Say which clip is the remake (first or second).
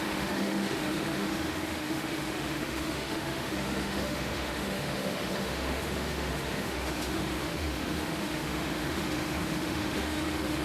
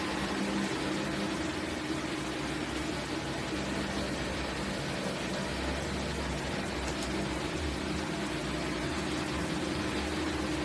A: first